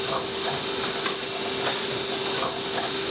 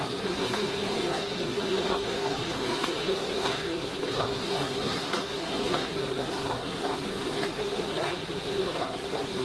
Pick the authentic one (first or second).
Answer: first